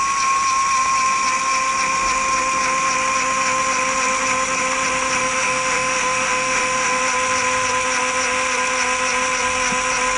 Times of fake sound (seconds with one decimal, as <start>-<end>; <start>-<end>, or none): 5.2-7.0